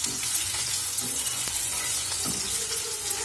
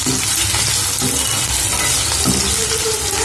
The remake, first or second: first